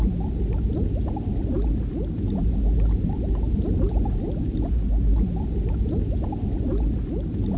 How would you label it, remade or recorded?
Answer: recorded